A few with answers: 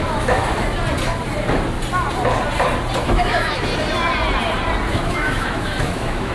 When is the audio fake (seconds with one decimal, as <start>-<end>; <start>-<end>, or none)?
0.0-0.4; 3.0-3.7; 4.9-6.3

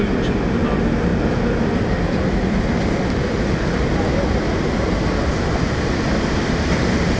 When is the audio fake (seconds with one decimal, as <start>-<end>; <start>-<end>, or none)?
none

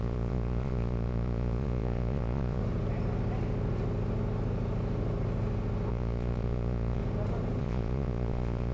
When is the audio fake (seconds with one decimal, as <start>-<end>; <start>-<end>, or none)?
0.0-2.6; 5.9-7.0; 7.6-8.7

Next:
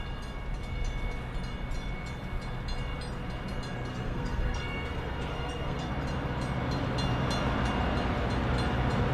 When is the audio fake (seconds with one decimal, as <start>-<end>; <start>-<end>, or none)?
3.9-5.9

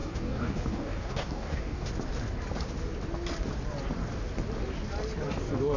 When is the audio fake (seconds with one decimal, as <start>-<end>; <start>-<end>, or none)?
0.0-1.9

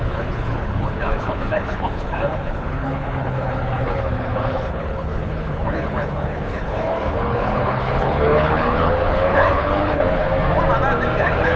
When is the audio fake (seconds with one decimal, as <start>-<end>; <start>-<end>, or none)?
0.0-10.3; 11.2-11.6